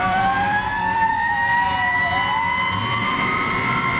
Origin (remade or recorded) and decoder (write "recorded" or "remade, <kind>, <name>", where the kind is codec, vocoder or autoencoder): remade, vocoder, BigVGAN v2